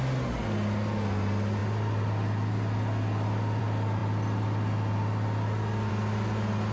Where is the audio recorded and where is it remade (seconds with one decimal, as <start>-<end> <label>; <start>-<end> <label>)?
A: 0.0-6.7 recorded